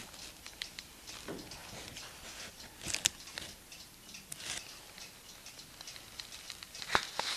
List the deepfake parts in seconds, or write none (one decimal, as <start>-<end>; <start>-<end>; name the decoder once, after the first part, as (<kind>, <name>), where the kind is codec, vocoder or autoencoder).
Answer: none